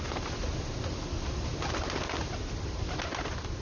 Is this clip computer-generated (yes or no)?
no